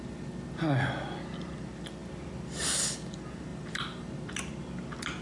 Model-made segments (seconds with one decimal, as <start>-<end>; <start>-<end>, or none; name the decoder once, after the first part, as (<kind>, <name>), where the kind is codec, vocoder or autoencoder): 3.5-4.1 (vocoder, BigVGAN v2)